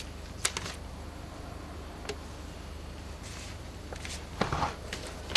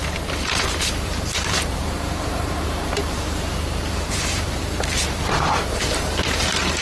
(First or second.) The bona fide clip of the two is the first